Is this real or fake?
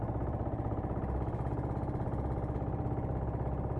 real